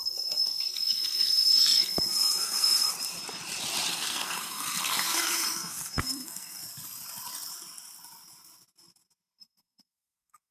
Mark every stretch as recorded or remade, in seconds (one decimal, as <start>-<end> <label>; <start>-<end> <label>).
0.0-2.9 remade; 2.9-3.9 recorded; 3.9-6.6 remade; 6.6-9.4 recorded; 9.4-10.5 remade